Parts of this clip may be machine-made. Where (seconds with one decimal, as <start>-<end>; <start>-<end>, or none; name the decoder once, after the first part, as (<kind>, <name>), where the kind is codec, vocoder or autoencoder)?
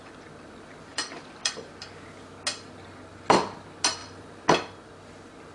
0.9-1.5 (vocoder, BigVGAN v2); 4.0-4.9